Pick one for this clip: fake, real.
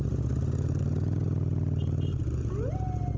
real